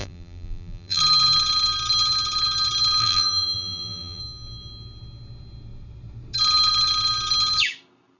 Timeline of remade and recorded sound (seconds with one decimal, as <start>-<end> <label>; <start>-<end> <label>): 0.0-1.0 remade; 1.0-3.0 recorded; 3.0-4.2 remade; 4.2-8.2 recorded